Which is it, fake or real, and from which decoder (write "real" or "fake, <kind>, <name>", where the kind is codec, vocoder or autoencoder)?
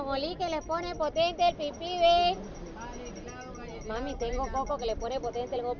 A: real